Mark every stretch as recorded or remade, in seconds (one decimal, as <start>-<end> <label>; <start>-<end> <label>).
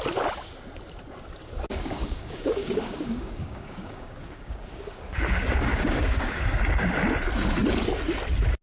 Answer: 0.0-1.4 recorded; 1.4-6.6 remade; 6.6-8.6 recorded